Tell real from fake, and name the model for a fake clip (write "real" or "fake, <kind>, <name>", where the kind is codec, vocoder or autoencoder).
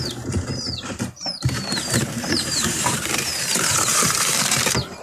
fake, vocoder, BigVGAN v2